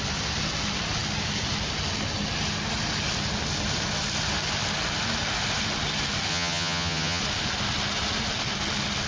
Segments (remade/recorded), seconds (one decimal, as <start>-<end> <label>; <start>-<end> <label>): 0.0-6.3 recorded; 6.3-7.2 remade; 7.2-9.1 recorded